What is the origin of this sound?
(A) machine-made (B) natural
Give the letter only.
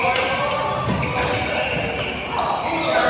B